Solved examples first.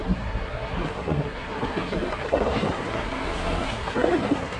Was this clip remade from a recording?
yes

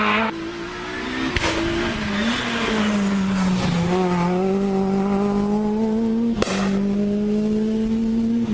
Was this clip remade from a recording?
no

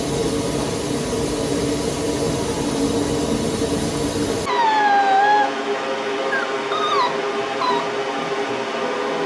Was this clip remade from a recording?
no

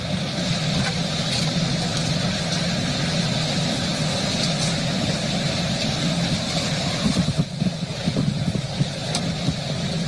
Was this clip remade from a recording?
no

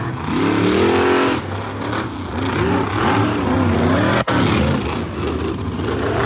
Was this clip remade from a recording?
no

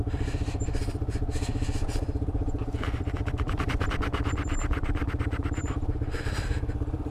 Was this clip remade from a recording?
yes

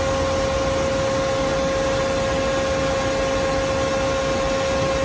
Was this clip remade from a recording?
no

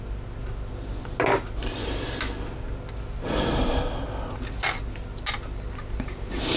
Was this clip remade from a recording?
no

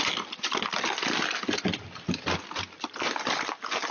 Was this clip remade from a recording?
no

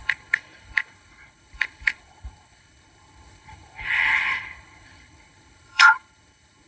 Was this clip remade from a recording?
yes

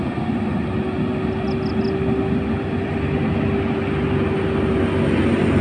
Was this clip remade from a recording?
no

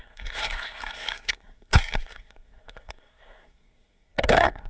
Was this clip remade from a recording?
yes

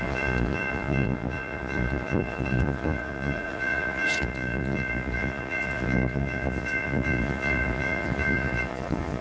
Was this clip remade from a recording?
yes